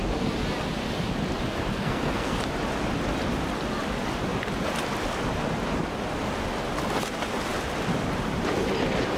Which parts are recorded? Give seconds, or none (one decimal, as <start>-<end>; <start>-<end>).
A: 0.0-1.7; 2.4-9.2